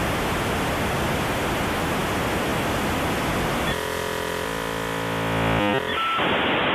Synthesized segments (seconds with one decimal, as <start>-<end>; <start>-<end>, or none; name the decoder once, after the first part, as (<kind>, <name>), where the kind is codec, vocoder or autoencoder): none